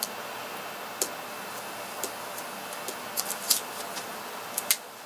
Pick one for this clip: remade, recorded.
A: recorded